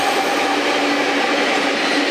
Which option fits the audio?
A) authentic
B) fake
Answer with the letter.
A